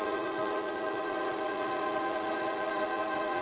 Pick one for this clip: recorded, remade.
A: remade